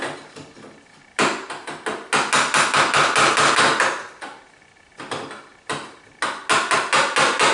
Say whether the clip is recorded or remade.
recorded